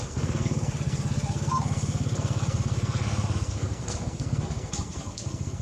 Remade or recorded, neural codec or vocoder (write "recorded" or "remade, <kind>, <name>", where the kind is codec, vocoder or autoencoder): remade, codec, SNAC